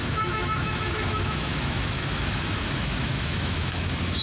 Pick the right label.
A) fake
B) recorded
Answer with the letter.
A